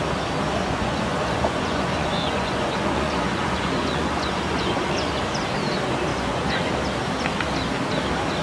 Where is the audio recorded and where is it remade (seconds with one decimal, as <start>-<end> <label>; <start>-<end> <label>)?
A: 0.0-0.6 recorded; 0.6-5.2 remade; 5.2-6.1 recorded; 6.1-6.7 remade; 6.7-8.4 recorded